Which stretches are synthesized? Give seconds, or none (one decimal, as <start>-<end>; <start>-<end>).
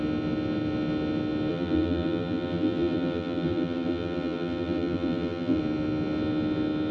1.5-5.6